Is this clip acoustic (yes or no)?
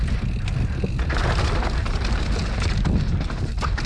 yes